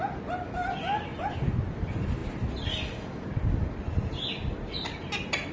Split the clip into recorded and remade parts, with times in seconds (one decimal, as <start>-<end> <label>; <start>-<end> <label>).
0.0-5.5 recorded